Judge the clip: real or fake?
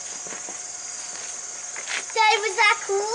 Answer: real